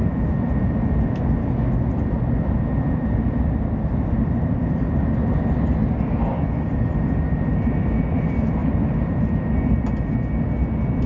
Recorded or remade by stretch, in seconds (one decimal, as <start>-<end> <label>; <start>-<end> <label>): 0.0-11.1 recorded